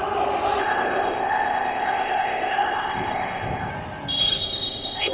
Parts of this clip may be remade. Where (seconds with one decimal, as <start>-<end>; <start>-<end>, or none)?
0.6-3.7; 4.2-5.1